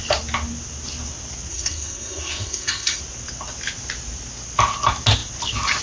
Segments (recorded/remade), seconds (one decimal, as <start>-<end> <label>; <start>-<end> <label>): 0.0-1.5 recorded; 1.5-3.0 remade; 3.0-5.8 recorded